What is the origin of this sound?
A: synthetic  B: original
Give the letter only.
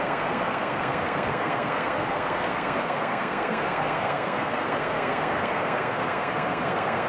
A